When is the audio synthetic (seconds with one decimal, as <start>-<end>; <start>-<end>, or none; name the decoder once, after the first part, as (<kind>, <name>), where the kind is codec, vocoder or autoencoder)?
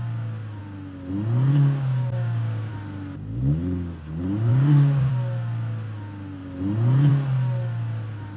1.5-2.7 (codec, DAC); 4.5-5.1